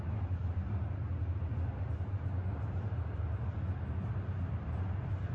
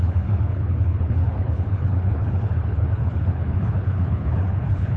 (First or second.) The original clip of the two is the first